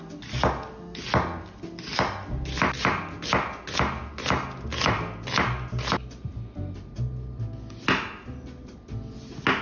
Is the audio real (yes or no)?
yes